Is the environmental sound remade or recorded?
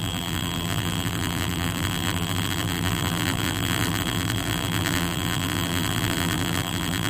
remade